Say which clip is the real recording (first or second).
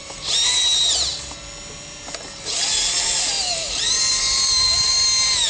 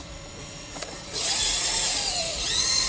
first